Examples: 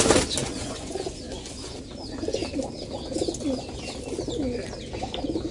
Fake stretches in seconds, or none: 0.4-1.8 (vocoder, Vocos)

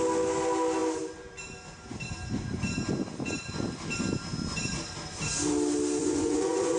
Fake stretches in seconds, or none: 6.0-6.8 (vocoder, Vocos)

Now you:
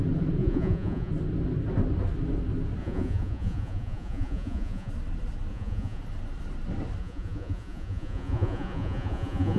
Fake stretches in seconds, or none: 0.4-1.1 (vocoder, Vocos); 2.8-4.9; 5.5-6.0; 7.0-9.6